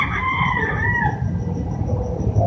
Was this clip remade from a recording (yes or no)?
no